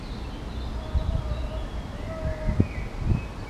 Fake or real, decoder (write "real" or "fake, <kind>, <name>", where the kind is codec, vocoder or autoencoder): real